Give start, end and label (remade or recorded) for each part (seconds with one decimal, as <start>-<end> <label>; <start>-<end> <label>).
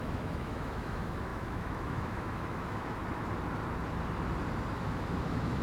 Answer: 0.0-3.0 remade; 3.0-4.7 recorded; 4.7-5.6 remade